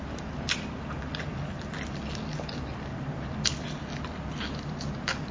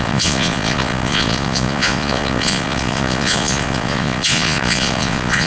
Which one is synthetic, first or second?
second